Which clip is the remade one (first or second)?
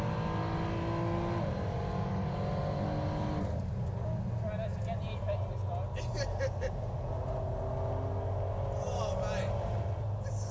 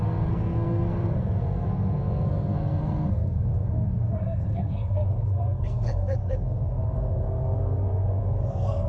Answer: second